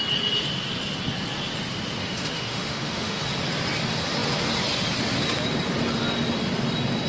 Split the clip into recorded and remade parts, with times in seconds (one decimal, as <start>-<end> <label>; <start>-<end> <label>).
0.0-2.0 recorded; 2.0-3.2 remade; 3.2-7.1 recorded